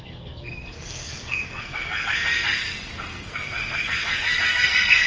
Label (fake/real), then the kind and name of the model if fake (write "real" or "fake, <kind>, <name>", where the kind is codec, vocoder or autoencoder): fake, codec, SNAC